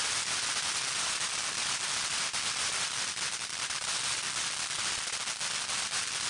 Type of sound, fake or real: real